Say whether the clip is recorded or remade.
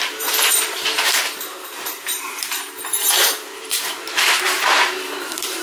remade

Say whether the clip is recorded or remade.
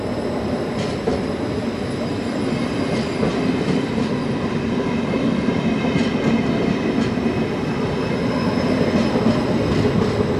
recorded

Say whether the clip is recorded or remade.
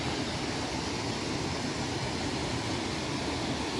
recorded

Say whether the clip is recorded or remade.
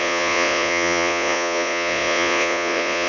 remade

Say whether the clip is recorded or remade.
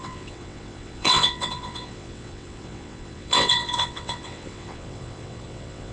remade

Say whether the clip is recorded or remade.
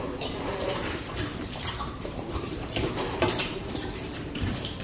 remade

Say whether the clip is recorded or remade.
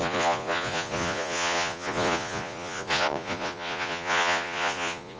remade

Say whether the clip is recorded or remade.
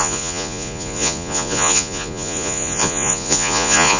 remade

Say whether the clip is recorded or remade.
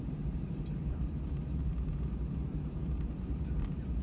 remade